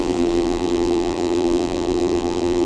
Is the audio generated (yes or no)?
yes